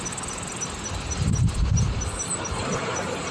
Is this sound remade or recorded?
recorded